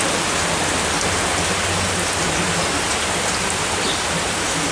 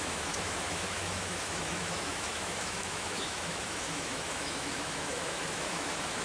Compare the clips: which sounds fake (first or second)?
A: second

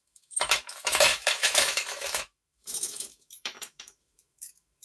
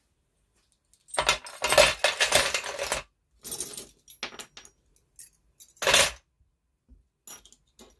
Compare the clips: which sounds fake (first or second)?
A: first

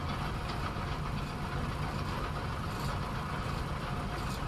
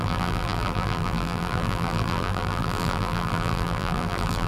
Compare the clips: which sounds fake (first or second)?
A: second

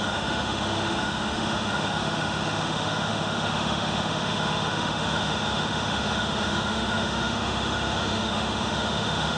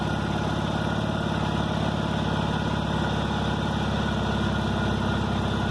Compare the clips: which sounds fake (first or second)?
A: first